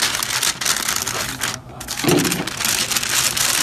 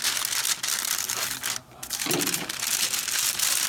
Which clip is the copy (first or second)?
second